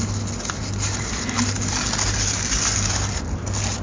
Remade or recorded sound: recorded